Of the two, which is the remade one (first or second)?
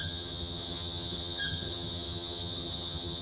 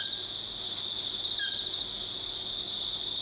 first